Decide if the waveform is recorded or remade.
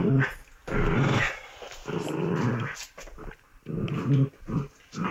recorded